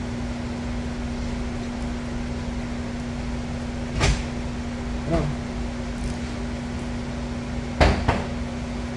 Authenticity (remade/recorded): recorded